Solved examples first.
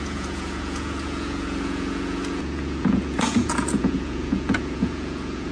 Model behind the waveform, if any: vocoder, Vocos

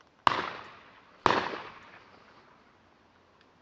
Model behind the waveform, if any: none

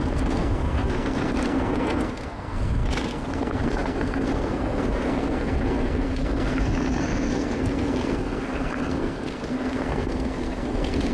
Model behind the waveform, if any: codec, SNAC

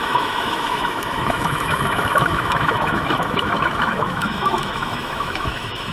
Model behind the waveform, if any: autoencoder, DAC-VAE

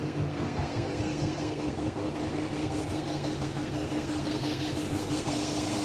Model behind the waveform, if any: codec, SNAC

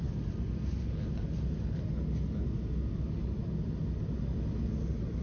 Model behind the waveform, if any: none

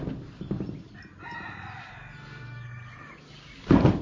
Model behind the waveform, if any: none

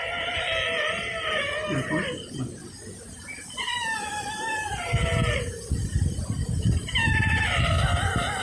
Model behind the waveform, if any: none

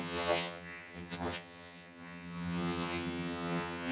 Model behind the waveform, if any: vocoder, HiFi-GAN